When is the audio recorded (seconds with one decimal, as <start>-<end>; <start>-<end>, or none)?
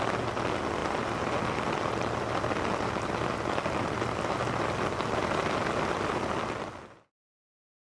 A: 0.0-7.9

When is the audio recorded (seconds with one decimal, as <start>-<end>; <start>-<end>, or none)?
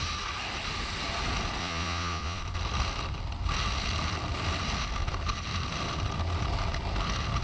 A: 0.0-1.6; 2.4-7.4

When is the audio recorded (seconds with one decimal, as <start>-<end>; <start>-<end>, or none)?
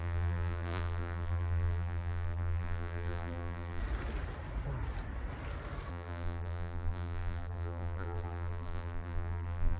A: 3.8-5.9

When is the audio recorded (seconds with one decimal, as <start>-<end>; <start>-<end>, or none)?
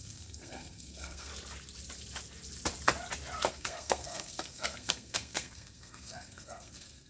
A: 1.3-3.5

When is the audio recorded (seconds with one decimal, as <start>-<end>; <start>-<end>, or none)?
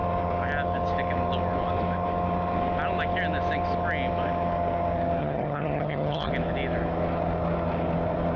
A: 0.0-5.2; 6.3-8.4